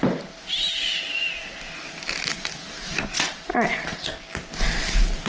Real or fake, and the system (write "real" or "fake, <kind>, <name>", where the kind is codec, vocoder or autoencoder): real